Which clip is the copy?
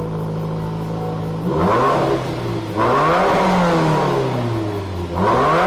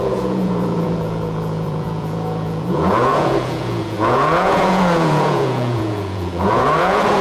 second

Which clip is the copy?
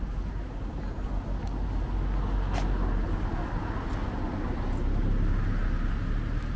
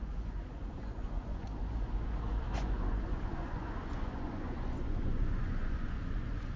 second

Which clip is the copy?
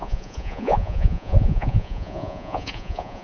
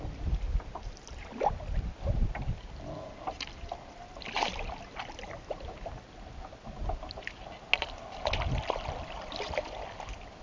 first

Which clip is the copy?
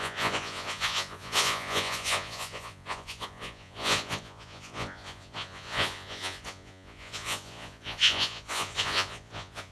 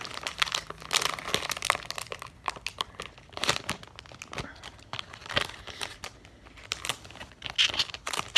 first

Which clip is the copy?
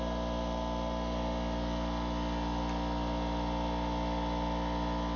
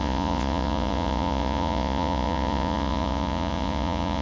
second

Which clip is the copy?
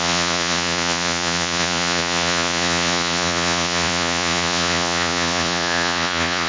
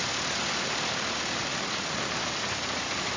first